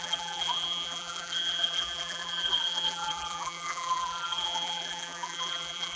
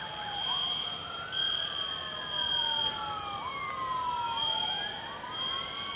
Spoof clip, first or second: first